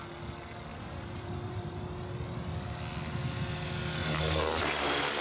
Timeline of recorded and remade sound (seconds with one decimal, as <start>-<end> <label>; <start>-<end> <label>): 0.0-0.7 recorded; 0.7-1.8 remade; 1.8-4.0 recorded; 4.0-4.6 remade; 4.6-5.2 recorded